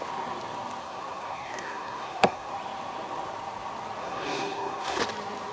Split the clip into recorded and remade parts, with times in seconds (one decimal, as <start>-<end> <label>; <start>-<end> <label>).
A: 0.0-0.8 recorded; 0.8-2.5 remade; 2.5-4.0 recorded; 4.0-5.0 remade; 5.0-5.5 recorded